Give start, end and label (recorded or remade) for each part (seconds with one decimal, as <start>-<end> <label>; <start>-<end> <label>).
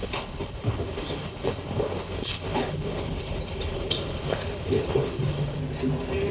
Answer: 0.0-5.6 remade; 5.6-6.3 recorded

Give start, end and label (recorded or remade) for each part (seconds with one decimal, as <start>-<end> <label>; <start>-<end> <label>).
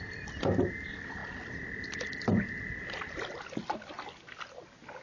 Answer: 0.0-5.0 recorded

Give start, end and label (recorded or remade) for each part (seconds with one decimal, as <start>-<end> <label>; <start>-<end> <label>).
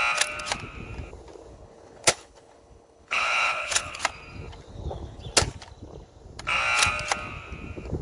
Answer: 0.0-1.5 recorded; 1.5-4.0 remade; 4.0-4.7 recorded; 4.7-5.2 remade; 5.2-8.0 recorded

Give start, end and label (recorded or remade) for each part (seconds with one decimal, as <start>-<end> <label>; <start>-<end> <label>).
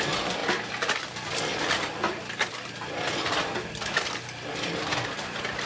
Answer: 0.0-5.7 recorded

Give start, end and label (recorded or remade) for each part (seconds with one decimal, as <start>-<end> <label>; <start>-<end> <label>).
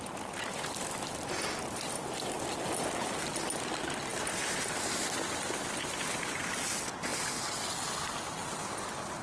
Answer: 0.0-9.2 recorded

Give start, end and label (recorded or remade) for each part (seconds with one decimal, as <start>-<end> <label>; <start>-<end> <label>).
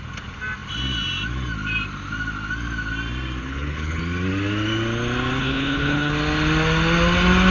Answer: 0.0-3.4 recorded; 3.4-4.0 remade; 4.0-5.4 recorded; 5.4-6.1 remade; 6.1-7.5 recorded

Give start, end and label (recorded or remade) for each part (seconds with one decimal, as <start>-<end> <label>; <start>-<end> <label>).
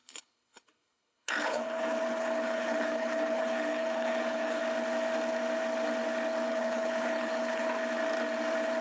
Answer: 0.0-4.6 remade; 4.6-6.5 recorded; 6.5-7.7 remade; 7.7-8.8 recorded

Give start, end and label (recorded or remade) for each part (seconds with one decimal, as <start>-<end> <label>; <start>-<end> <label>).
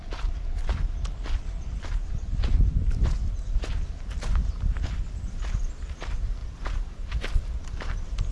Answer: 0.0-8.3 recorded